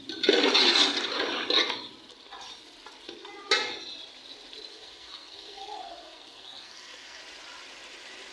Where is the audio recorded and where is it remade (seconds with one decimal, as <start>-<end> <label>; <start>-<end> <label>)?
0.0-4.7 recorded; 4.7-7.2 remade; 7.2-8.3 recorded